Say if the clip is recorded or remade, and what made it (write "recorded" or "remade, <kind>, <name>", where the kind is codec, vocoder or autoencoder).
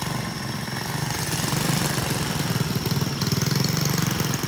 recorded